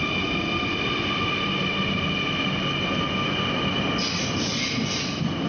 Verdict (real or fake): real